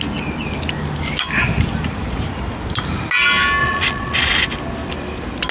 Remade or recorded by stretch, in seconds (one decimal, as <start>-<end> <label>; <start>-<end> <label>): 0.0-3.6 recorded; 3.6-4.2 remade; 4.2-5.5 recorded